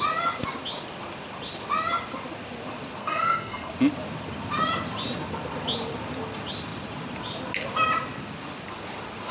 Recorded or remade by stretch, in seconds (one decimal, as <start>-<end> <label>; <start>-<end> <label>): 0.0-3.0 recorded; 3.0-3.7 remade; 3.7-9.3 recorded